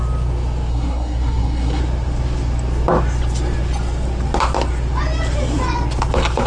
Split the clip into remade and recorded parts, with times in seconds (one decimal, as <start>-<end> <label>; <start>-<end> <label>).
0.0-0.7 recorded; 0.7-1.8 remade; 1.8-6.5 recorded

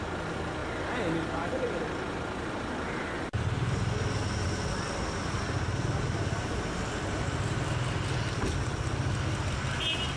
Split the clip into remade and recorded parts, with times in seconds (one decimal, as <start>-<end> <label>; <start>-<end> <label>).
0.0-10.2 recorded

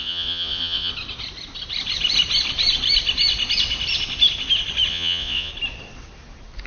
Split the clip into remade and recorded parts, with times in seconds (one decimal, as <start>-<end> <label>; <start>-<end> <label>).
0.0-0.9 remade; 0.9-4.9 recorded; 4.9-5.5 remade; 5.5-6.7 recorded

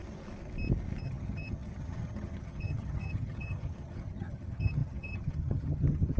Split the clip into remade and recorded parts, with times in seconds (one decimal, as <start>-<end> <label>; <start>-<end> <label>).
0.0-1.0 recorded; 1.0-6.2 remade

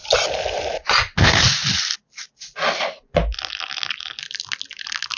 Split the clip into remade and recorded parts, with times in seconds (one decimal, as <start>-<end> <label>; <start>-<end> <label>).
0.0-5.2 recorded

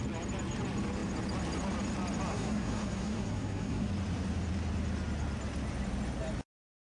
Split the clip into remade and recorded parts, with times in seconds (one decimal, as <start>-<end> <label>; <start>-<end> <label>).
0.0-2.3 recorded; 2.3-3.9 remade; 3.9-6.9 recorded

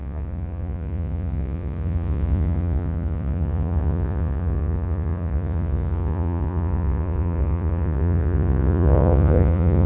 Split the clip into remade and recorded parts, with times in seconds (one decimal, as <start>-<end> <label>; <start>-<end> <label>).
0.0-9.9 remade

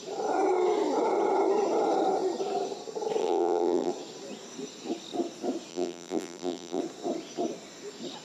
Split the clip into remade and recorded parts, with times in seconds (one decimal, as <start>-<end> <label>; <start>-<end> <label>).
0.0-3.2 recorded; 3.2-3.9 remade; 3.9-5.7 recorded; 5.7-6.8 remade; 6.8-8.2 recorded